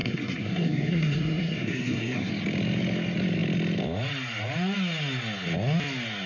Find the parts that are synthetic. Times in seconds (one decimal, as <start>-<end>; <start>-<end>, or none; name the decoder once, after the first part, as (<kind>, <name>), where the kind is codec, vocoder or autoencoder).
0.0-2.3 (codec, SNAC)